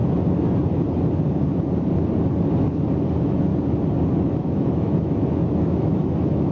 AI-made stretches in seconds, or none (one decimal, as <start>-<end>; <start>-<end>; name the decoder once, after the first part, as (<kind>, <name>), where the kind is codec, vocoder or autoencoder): 3.1-3.5 (autoencoder, DAC-VAE); 4.2-6.5